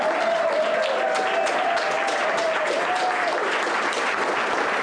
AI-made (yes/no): no